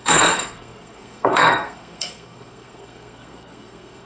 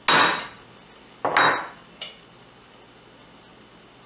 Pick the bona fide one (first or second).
second